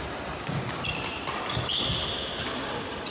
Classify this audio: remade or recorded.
recorded